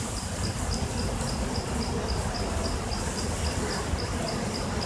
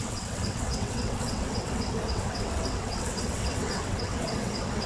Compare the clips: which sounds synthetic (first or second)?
second